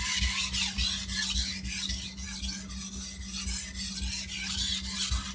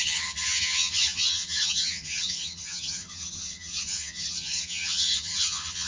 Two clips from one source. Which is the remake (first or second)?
second